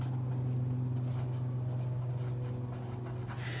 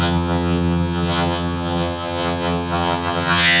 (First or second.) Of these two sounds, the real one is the first